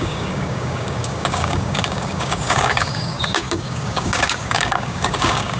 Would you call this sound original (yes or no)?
no